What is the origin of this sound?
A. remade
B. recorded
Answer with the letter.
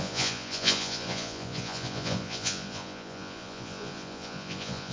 A